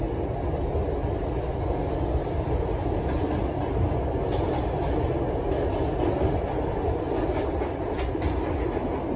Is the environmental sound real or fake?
real